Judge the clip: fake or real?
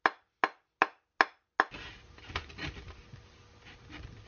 real